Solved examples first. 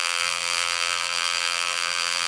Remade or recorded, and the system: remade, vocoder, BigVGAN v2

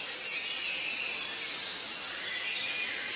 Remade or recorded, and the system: recorded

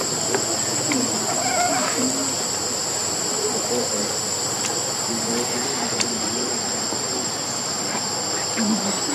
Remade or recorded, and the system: recorded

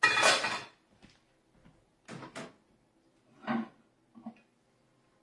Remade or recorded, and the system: recorded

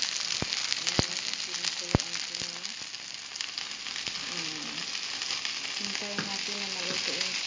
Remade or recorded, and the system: recorded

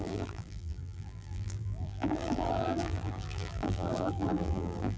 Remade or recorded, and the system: remade, vocoder, BigVGAN v2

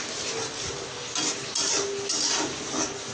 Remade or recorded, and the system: recorded